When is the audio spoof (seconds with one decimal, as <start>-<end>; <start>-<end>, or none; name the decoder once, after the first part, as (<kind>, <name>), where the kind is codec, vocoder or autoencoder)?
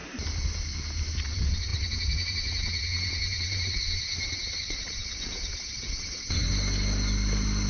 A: 1.2-6.4 (vocoder, WaveNeXt)